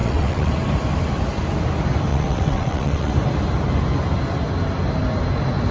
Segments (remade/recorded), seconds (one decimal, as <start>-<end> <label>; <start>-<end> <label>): 0.0-0.5 remade; 0.5-2.1 recorded; 2.1-3.1 remade; 3.1-5.7 recorded